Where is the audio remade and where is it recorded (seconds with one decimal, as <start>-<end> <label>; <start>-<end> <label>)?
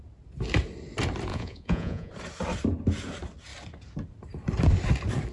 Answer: 0.0-1.3 recorded; 1.3-2.1 remade; 2.1-5.3 recorded